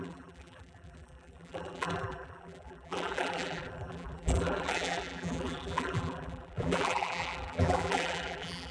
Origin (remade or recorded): remade